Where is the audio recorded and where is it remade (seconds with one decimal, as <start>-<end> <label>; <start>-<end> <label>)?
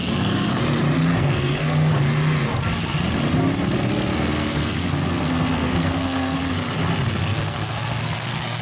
0.0-0.6 remade; 0.6-1.1 recorded; 1.1-2.0 remade; 2.0-3.9 recorded; 3.9-6.4 remade; 6.4-7.2 recorded; 7.2-8.6 remade